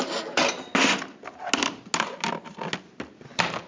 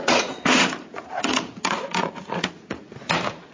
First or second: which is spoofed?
second